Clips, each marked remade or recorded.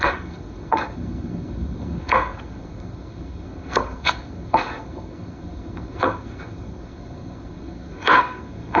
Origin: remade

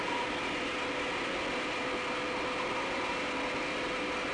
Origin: recorded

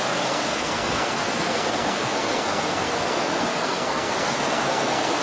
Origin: remade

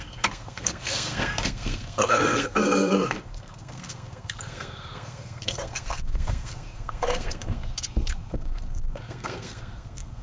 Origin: remade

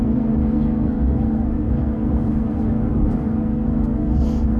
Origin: remade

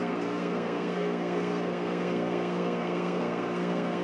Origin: remade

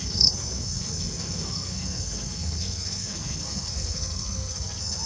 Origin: remade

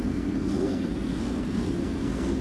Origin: remade